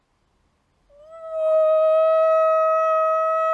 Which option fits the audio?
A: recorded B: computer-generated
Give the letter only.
A